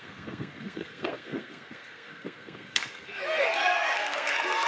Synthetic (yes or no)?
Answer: yes